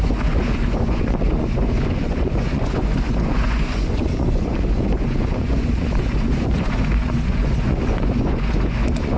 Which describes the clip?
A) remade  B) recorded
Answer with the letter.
A